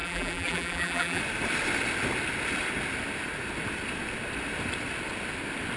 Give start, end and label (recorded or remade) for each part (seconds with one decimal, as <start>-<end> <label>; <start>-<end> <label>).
0.0-1.2 remade; 1.2-5.8 recorded